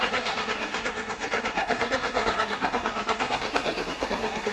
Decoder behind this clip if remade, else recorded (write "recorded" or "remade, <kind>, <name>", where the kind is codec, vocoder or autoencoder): remade, codec, SNAC